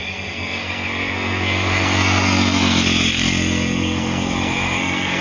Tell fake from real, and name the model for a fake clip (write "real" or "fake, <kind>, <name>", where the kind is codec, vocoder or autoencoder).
fake, codec, SNAC